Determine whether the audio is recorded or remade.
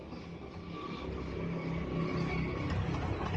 recorded